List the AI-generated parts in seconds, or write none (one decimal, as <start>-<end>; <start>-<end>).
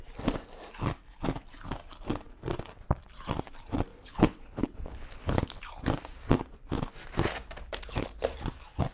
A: 3.9-5.6